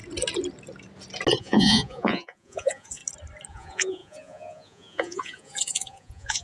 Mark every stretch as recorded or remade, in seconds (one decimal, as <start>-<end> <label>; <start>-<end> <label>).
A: 0.0-1.4 recorded; 1.4-3.0 remade; 3.0-3.5 recorded; 3.5-6.4 remade